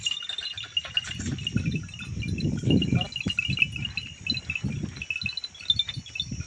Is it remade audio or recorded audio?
recorded